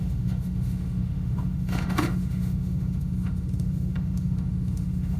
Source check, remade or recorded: remade